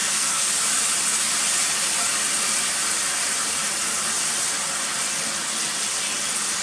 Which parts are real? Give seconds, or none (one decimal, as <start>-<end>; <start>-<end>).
0.5-6.6